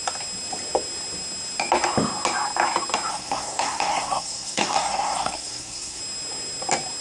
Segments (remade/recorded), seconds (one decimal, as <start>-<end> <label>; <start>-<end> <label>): 0.0-3.1 recorded; 3.1-6.0 remade; 6.0-7.0 recorded

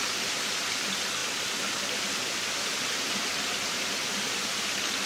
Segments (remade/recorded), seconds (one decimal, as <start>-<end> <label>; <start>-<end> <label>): 0.0-5.1 recorded